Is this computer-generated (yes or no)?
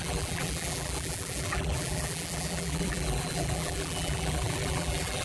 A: yes